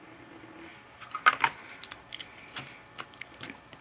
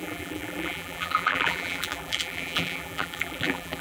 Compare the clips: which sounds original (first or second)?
first